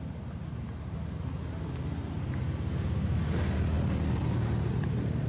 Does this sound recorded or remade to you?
recorded